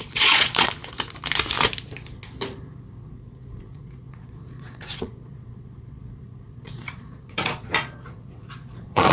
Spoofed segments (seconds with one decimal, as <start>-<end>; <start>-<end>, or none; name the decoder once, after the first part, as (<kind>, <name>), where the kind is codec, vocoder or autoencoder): 0.0-0.8 (vocoder, Vocos); 3.1-9.1